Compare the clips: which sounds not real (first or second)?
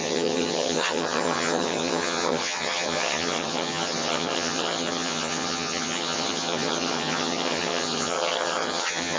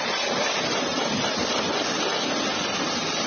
first